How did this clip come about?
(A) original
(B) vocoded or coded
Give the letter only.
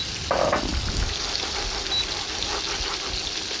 A